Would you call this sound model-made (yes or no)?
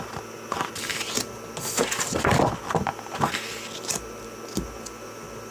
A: no